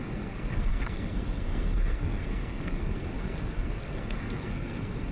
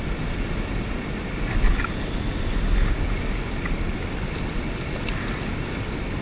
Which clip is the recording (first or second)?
second